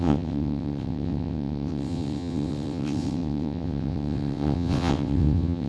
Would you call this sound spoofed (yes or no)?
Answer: yes